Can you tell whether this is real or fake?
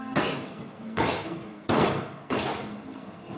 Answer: fake